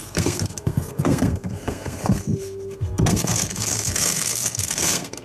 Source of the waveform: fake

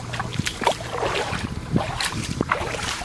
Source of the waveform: fake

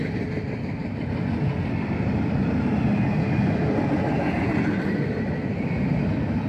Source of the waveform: real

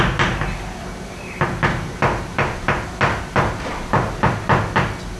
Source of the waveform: real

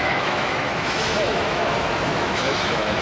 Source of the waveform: fake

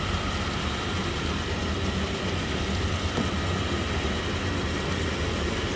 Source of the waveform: real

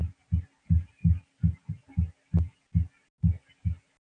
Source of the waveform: real